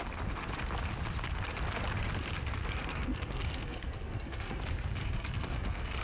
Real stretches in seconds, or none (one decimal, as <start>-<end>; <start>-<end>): 0.0-2.6; 4.6-5.0